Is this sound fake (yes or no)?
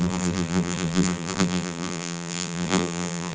yes